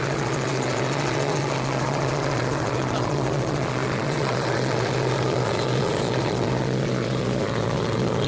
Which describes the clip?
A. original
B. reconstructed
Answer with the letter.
B